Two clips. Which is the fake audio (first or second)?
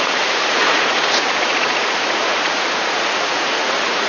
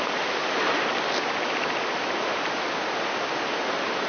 first